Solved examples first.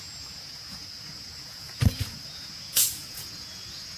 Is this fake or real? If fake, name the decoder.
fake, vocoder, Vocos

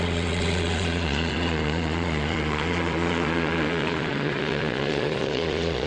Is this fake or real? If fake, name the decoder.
fake, vocoder, Vocos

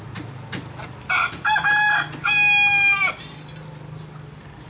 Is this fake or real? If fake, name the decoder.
real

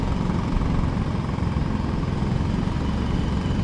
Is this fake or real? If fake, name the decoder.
real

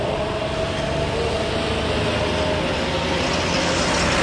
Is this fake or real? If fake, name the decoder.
real